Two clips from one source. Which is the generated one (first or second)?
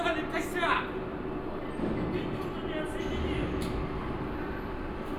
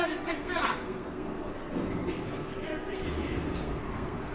second